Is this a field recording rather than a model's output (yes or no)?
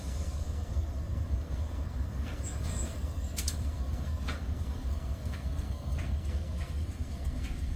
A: no